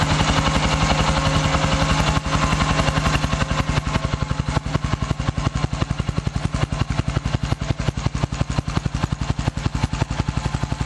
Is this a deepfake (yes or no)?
no